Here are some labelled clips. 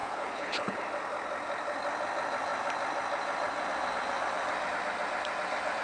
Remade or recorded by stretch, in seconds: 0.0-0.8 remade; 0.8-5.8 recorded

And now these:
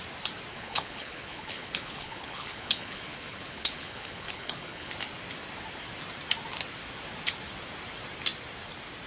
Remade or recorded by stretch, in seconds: 0.0-0.5 recorded; 0.5-4.9 remade; 4.9-9.1 recorded

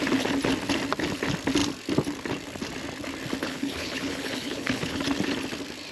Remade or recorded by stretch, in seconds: 0.0-3.4 recorded; 3.4-5.0 remade; 5.0-5.9 recorded

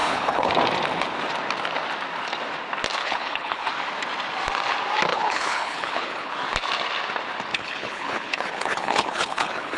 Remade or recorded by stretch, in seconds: 0.0-0.5 remade; 0.5-3.0 recorded; 3.0-3.7 remade; 3.7-5.1 recorded; 5.1-6.3 remade; 6.3-7.5 recorded; 7.5-9.8 remade

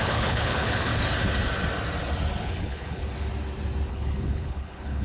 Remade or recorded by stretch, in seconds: 0.0-0.9 remade; 0.9-2.4 recorded; 2.4-3.0 remade; 3.0-3.9 recorded; 3.9-5.0 remade

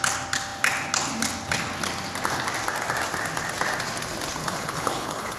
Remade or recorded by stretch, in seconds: 0.0-4.4 recorded; 4.4-5.4 remade

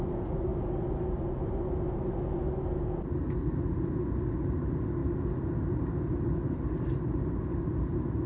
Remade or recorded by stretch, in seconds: 0.0-8.3 recorded